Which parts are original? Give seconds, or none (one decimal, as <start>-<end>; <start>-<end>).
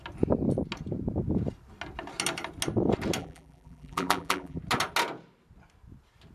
0.0-3.2; 4.6-6.3